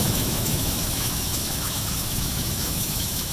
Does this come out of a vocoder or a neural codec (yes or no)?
yes